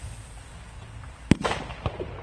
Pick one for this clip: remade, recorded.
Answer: recorded